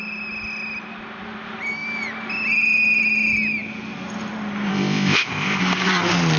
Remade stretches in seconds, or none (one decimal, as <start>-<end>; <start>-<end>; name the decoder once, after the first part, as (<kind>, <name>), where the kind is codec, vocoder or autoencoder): 4.7-5.6 (codec, ZipCodec)